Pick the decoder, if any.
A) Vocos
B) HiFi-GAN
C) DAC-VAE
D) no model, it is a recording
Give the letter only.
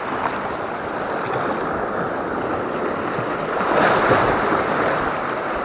D